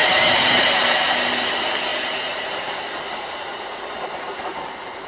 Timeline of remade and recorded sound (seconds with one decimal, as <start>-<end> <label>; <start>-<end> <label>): 0.0-1.1 remade; 1.1-1.9 recorded; 1.9-5.1 remade